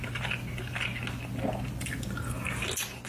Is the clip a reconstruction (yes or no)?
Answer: no